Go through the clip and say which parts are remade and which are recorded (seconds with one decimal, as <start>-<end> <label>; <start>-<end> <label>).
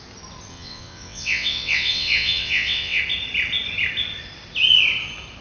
0.0-0.5 recorded; 0.5-3.0 remade; 3.0-5.4 recorded